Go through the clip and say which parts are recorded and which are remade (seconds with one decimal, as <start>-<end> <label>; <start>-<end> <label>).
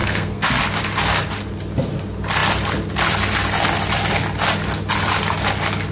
0.0-0.5 remade; 0.5-5.9 recorded